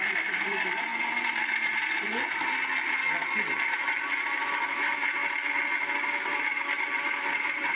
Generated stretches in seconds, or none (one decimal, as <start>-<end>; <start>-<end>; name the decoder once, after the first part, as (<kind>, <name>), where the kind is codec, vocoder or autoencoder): 0.0-2.1 (vocoder, BigVGAN v2); 4.7-5.2; 6.4-7.8